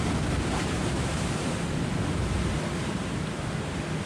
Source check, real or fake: real